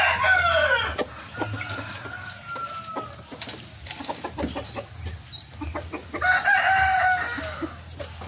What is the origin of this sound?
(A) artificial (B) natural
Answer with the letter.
B